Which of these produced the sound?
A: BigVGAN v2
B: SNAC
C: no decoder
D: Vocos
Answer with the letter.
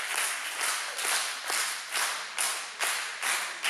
C